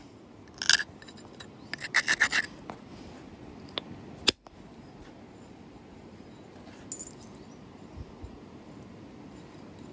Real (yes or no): yes